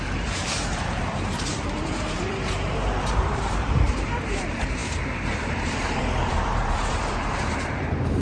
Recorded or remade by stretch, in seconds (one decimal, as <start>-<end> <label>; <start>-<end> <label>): 0.0-8.2 remade